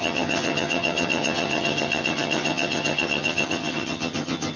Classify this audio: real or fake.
fake